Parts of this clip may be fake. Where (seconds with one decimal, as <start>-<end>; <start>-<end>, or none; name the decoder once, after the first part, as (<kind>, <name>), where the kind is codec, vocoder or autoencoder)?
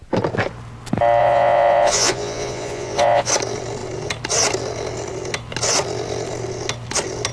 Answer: 1.2-3.3 (vocoder, Vocos)